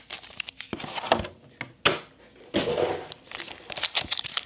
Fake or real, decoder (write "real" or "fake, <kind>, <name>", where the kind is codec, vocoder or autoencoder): real